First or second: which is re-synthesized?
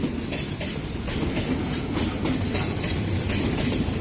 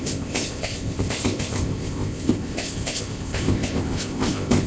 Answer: second